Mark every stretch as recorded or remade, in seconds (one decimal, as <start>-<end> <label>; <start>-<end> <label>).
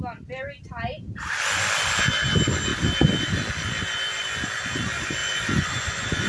0.0-5.2 recorded; 5.2-6.3 remade